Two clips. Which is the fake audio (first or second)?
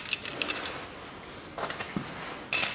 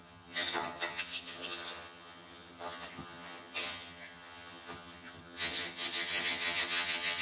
second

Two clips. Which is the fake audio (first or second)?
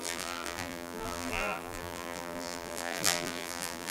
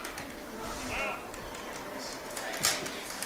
first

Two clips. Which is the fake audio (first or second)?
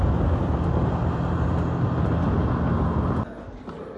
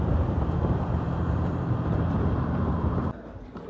second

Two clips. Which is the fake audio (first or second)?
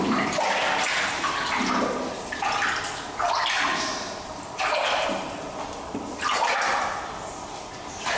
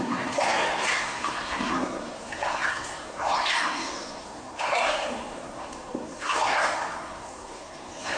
second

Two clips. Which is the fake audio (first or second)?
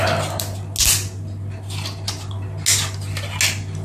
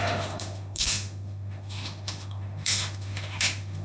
second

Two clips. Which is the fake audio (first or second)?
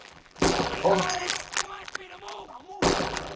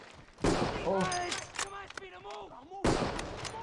first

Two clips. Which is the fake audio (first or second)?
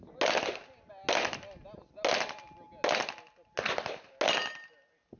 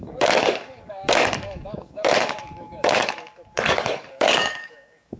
second